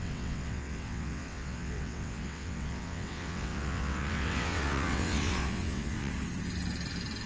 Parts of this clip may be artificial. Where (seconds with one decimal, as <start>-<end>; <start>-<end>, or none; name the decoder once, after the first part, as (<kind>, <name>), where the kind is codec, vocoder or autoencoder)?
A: 0.0-6.1 (vocoder, WaveNeXt)

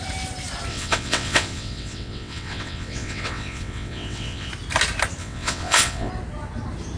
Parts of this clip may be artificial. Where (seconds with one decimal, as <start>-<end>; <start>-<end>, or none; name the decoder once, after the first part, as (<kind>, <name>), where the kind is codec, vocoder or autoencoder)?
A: 0.7-4.5 (vocoder, WaveNeXt); 5.2-6.1

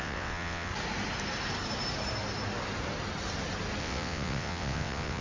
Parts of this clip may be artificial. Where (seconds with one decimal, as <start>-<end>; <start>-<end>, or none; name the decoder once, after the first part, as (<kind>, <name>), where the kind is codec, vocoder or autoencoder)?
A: 0.0-0.7 (vocoder, WaveNeXt); 3.8-5.2

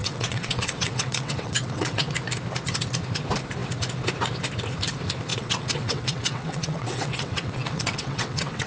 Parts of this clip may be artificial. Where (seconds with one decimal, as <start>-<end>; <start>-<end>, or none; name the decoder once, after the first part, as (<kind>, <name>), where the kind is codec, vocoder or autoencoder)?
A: 0.0-2.1 (vocoder, WaveNeXt); 5.3-8.7

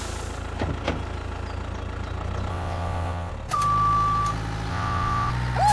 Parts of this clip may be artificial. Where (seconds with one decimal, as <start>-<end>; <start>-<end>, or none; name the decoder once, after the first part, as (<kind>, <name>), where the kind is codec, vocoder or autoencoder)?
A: 2.5-3.3 (vocoder, WaveNeXt); 4.7-5.3

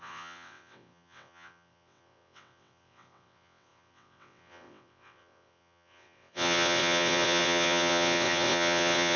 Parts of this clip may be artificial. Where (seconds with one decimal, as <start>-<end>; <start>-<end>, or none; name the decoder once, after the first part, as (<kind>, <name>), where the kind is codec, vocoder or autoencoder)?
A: 0.0-9.2 (vocoder, WaveNeXt)